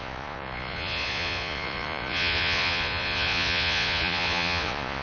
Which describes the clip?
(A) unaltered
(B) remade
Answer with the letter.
B